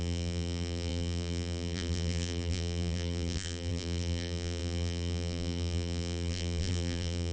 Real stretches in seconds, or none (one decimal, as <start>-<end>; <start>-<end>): none